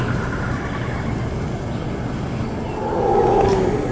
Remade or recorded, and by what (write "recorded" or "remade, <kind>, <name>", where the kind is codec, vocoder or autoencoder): recorded